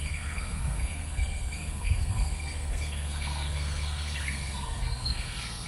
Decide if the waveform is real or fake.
fake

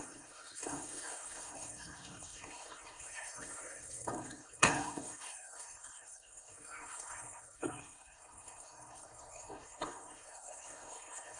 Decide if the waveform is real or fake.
fake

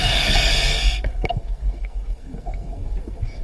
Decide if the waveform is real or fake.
fake